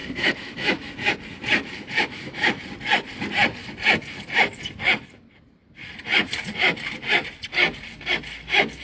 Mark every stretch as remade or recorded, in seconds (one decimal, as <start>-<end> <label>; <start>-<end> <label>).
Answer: 0.0-0.9 remade; 0.9-1.6 recorded; 1.6-2.6 remade; 2.6-8.8 recorded